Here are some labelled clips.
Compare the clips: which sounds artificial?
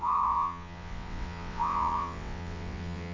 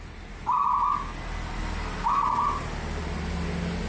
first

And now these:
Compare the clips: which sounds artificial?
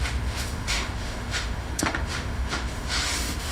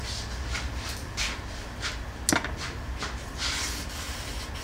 first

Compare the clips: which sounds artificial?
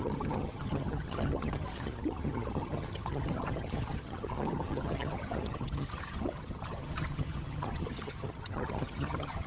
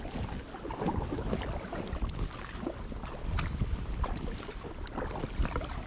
first